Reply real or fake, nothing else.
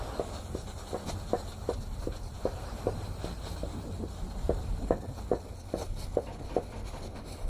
real